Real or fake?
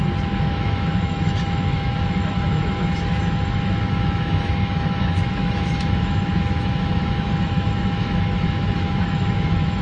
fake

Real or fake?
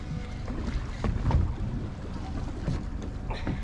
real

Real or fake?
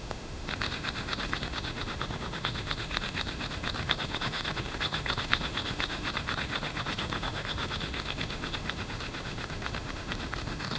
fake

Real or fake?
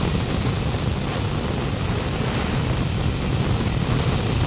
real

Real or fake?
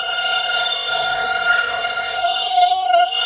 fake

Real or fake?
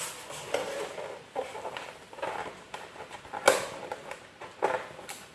real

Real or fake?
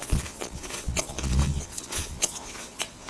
fake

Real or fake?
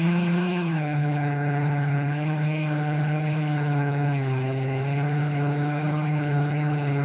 fake